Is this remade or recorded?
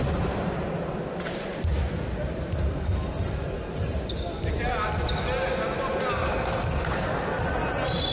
recorded